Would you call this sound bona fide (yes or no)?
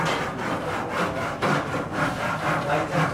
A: yes